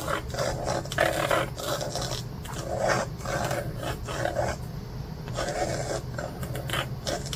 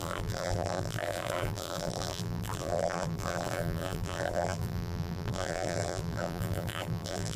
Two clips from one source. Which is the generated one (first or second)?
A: second